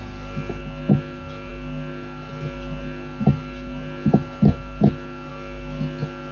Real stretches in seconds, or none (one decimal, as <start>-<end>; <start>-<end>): 0.0-6.3